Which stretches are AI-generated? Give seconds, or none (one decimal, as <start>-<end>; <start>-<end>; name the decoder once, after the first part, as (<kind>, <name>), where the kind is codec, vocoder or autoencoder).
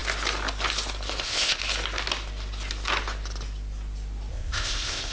1.2-1.6 (codec, ZipCodec); 4.3-5.1